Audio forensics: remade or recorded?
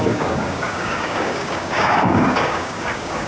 remade